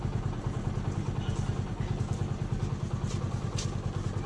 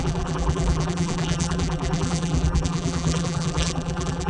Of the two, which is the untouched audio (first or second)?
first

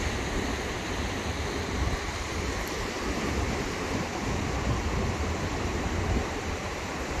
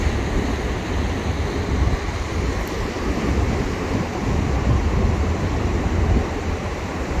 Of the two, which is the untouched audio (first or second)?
second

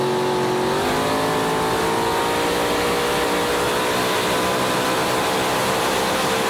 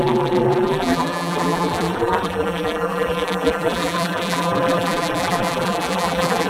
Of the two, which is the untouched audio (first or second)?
first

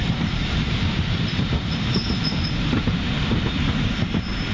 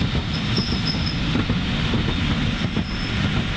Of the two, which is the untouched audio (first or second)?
second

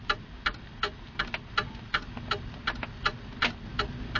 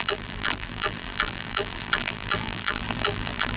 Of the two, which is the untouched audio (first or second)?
first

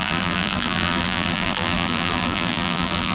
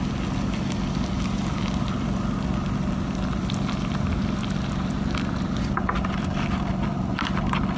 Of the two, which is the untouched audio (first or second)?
second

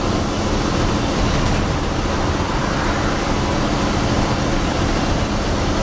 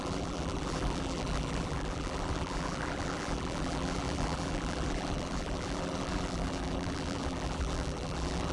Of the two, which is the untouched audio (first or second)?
first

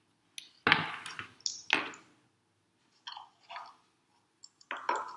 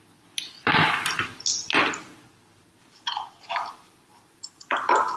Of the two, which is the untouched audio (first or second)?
first